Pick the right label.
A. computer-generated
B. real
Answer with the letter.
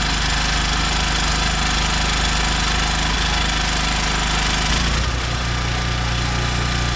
B